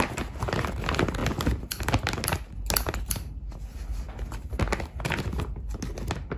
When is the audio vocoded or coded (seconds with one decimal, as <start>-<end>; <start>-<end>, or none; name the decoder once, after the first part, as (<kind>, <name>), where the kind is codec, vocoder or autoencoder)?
none